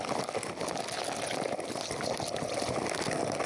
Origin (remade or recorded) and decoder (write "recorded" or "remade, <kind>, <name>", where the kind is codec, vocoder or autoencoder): recorded